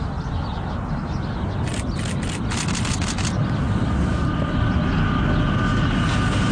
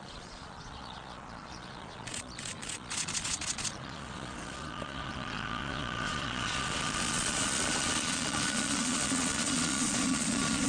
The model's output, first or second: second